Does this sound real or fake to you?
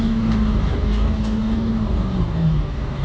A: fake